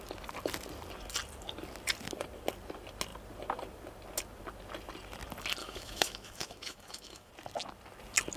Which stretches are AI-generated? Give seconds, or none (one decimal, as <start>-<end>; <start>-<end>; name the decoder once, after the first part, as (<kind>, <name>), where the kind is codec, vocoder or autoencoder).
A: 5.6-7.3 (autoencoder, DAC-VAE)